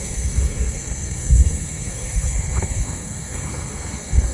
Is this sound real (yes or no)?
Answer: no